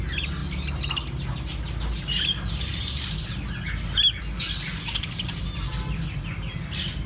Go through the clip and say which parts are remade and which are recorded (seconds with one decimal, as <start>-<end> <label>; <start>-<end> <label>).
0.0-7.1 recorded